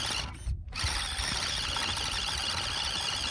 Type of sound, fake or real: real